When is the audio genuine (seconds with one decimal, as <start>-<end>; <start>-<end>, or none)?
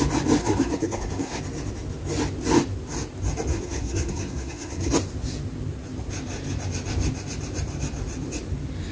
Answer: 0.0-0.4; 1.4-3.5; 4.9-8.9